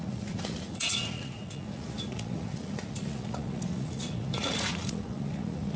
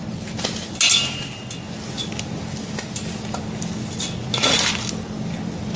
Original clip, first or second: second